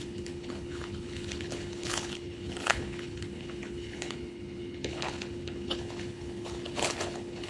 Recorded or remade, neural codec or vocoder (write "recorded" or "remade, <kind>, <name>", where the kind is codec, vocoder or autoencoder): remade, codec, HILCodec